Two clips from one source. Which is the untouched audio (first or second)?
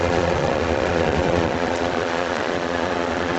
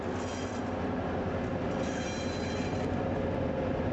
second